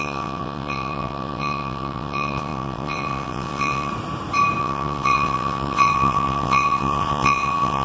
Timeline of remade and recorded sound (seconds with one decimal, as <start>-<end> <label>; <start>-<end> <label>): 0.0-3.9 remade; 3.9-4.6 recorded; 4.6-7.8 remade